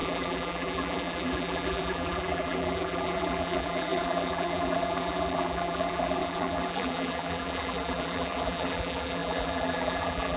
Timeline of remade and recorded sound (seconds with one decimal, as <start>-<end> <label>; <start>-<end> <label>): 0.0-10.4 remade